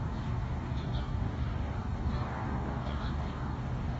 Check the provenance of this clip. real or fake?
fake